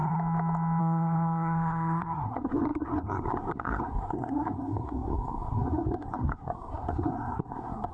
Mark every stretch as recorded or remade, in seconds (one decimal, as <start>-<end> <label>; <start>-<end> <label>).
0.0-0.8 recorded; 0.8-7.9 remade